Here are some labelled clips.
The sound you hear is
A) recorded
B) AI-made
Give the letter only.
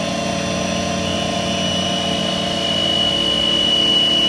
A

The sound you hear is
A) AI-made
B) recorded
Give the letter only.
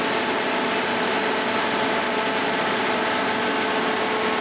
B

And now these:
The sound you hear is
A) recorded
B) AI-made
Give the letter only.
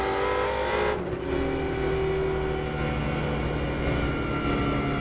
A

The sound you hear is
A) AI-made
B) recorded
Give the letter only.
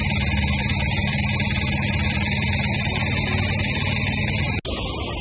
B